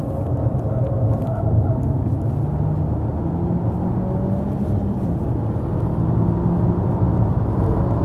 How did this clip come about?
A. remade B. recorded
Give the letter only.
B